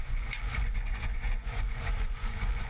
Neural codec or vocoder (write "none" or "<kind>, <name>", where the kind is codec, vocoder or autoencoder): vocoder, Vocos